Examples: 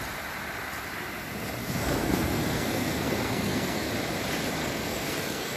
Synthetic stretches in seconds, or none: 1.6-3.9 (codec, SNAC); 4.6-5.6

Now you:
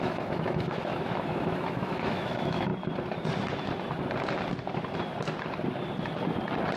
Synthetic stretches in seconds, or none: 0.0-2.7 (autoencoder, DAC-VAE)

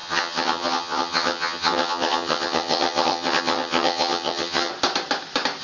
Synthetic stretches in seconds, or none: 0.0-4.7 (vocoder, HiFi-GAN)

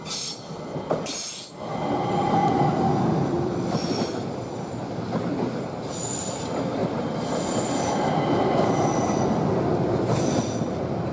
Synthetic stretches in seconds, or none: 2.4-2.9 (vocoder, BigVGAN v2)